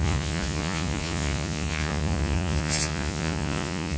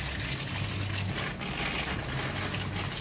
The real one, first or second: second